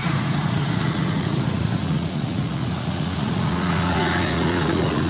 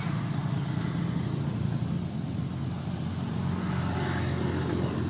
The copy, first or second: first